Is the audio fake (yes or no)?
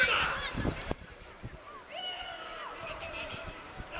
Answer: yes